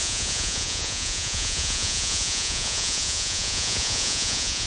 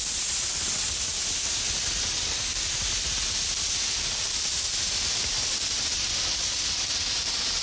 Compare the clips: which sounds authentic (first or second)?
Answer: second